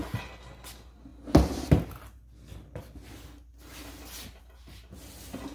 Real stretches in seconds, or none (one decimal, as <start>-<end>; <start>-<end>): 0.0-5.5